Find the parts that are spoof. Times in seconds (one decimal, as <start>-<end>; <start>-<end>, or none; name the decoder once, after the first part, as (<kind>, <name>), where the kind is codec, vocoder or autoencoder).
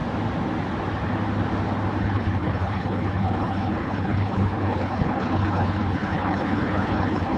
2.0-7.4 (codec, HILCodec)